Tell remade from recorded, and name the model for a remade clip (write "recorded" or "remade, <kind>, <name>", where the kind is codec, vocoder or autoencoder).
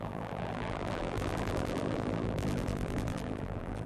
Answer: remade, vocoder, BigVGAN v2